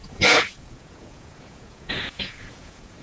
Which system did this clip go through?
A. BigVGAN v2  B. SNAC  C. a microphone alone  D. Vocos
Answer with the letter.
D